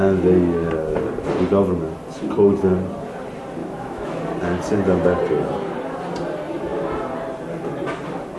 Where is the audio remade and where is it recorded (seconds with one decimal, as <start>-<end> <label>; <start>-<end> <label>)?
0.0-3.6 recorded; 3.6-4.2 remade; 4.2-8.4 recorded